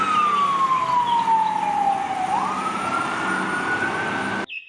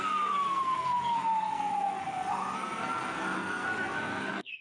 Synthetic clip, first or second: second